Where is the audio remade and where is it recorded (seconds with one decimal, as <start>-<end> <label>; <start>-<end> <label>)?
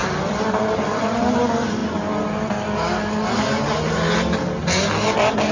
0.0-1.4 remade; 1.4-5.5 recorded